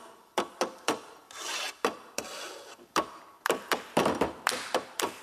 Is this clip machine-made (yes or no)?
no